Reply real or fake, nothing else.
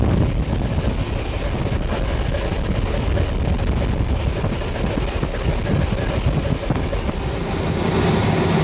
real